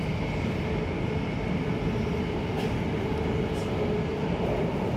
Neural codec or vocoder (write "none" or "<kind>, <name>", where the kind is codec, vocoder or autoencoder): none